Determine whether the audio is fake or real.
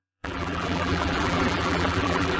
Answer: fake